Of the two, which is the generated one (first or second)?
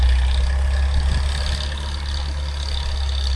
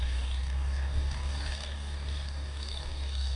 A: second